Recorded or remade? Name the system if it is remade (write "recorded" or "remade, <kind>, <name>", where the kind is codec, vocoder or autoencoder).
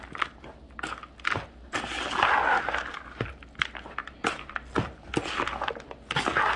recorded